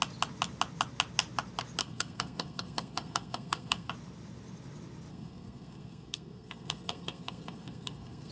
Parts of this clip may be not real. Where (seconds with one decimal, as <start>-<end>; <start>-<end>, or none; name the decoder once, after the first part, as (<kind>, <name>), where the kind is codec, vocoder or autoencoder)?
1.8-3.9 (codec, SNAC); 5.1-8.3

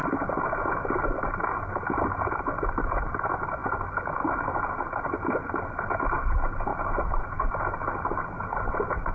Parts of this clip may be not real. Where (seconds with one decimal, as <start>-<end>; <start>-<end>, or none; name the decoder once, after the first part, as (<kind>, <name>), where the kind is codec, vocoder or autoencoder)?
none

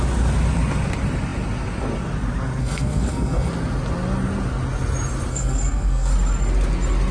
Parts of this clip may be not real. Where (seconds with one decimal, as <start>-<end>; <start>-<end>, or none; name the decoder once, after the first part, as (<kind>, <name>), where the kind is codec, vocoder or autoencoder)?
2.6-3.5 (codec, SNAC); 5.3-6.1

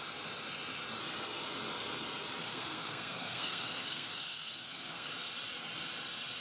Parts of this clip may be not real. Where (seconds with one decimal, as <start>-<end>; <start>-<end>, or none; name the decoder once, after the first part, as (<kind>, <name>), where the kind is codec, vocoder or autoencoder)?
2.4-5.1 (codec, SNAC)

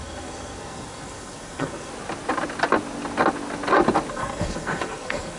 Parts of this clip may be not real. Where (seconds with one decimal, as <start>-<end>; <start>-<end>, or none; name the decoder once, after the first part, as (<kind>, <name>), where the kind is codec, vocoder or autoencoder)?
0.0-1.9 (codec, SNAC); 4.1-5.4

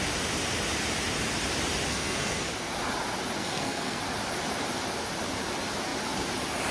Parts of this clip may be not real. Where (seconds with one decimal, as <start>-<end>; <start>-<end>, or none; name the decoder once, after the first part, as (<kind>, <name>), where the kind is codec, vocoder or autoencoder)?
1.9-2.5 (codec, SNAC); 3.4-4.0

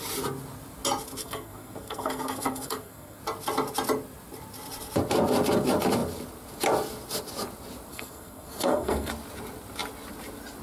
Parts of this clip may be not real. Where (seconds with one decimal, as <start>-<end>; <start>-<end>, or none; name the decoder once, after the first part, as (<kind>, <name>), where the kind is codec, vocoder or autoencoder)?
1.2-3.2 (codec, SNAC); 7.9-9.1